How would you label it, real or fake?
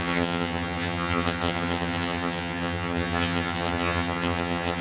fake